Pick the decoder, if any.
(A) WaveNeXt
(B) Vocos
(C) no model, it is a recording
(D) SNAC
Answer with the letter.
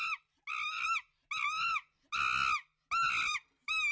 C